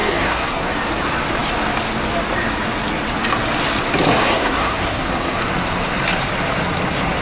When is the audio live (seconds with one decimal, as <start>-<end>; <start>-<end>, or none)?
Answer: 0.7-4.2; 5.4-7.2